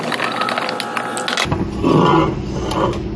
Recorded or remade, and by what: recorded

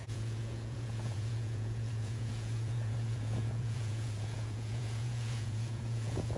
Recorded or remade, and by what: remade, vocoder, Vocos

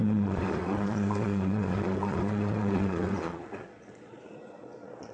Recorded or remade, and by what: remade, vocoder, Vocos